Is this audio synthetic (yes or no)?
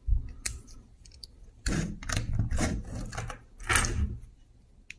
no